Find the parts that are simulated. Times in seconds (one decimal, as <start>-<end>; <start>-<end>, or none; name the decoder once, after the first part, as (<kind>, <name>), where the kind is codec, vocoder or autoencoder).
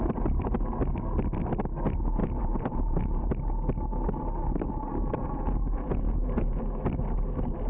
2.2-3.3 (vocoder, Vocos); 4.9-6.6